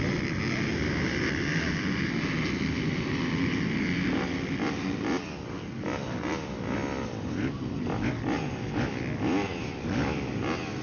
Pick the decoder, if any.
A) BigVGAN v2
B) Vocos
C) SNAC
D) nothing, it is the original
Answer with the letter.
D